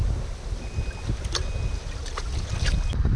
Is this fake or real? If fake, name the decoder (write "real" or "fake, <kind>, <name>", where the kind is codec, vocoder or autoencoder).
real